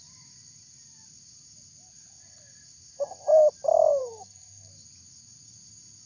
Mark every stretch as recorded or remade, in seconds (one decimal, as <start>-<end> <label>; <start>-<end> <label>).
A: 0.0-4.0 recorded; 4.0-4.7 remade; 4.7-6.1 recorded